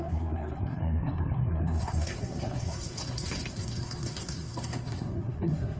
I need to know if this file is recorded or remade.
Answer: remade